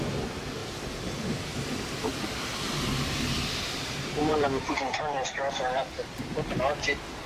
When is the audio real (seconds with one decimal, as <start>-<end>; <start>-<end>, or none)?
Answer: 0.0-0.6; 1.5-2.1; 3.3-4.2